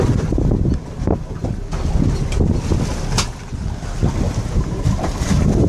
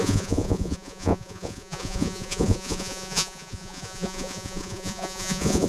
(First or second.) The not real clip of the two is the second